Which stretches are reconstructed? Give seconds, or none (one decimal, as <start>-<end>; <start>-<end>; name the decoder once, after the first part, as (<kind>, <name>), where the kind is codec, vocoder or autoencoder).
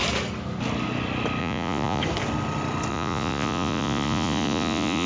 1.4-2.0 (vocoder, Vocos); 2.9-5.1